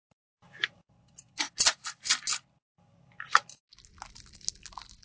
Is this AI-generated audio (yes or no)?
no